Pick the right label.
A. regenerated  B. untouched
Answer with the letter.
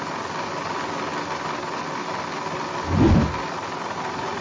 B